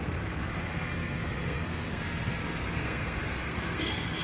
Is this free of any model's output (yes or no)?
no